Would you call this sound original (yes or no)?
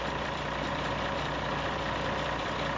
no